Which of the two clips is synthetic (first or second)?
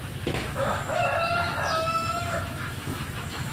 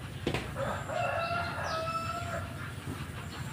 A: first